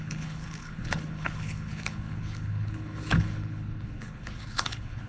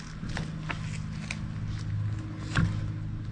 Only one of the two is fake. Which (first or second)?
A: first